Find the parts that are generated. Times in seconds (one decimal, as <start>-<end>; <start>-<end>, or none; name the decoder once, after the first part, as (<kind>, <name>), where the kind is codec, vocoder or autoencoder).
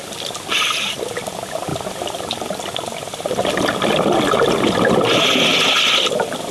1.7-4.9 (vocoder, BigVGAN v2)